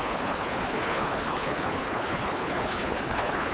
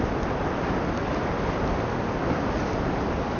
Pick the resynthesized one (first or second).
first